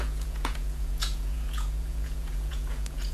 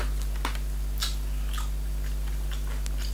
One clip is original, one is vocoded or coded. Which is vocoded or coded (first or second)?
first